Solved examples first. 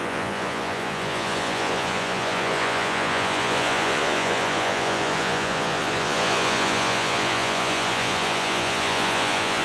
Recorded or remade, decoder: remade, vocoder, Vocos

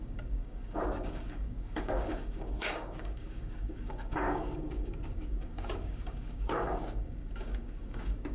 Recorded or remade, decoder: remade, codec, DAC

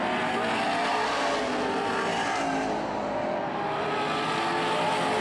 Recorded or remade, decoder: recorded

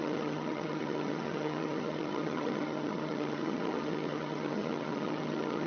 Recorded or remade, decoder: remade, vocoder, HiFi-GAN